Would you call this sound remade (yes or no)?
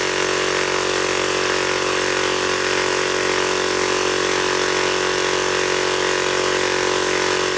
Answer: no